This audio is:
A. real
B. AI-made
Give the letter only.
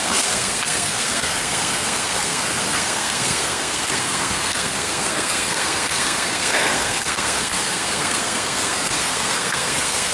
B